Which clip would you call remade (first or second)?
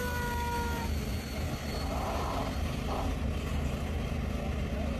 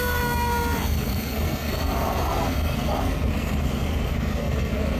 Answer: second